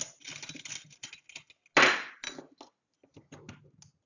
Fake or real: real